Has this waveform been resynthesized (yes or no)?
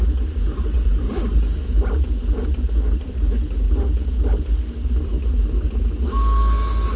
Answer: no